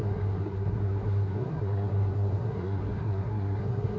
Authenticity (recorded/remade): remade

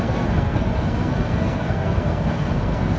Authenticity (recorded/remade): remade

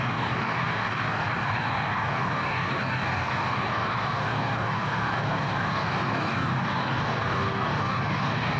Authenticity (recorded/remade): remade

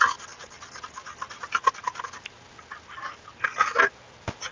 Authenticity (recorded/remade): recorded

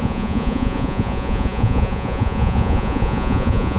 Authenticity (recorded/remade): remade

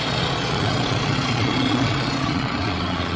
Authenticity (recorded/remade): remade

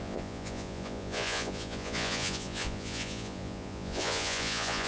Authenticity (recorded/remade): remade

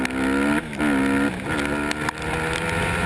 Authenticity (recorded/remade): recorded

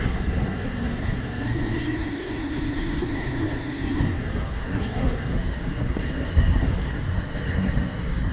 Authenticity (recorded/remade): remade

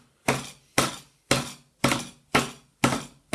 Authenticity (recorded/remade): recorded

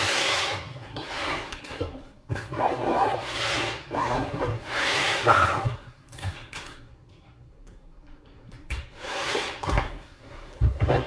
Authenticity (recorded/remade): remade